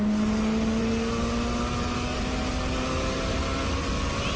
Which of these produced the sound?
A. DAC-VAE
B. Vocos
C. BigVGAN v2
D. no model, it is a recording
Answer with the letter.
D